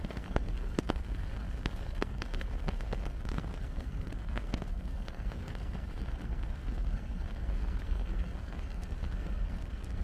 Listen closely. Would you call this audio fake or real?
fake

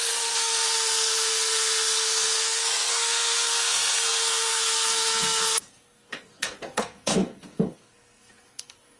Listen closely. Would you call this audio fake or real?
fake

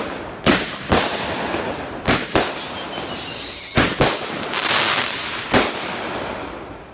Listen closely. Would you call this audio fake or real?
real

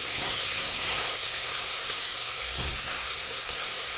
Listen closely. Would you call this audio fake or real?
fake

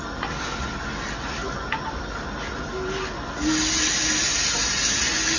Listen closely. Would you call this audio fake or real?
real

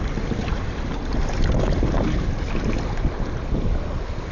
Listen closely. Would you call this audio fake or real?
real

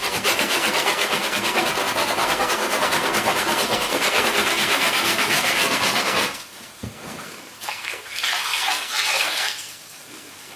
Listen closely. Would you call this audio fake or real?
fake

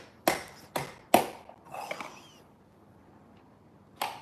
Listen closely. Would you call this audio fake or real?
real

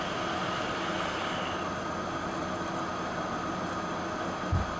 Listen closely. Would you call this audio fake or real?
real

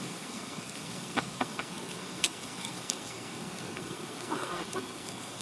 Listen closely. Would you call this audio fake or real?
fake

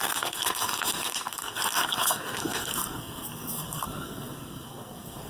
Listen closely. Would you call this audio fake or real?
fake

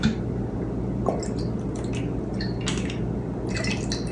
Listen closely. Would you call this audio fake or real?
real